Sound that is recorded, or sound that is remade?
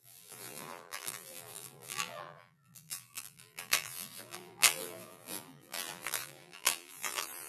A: remade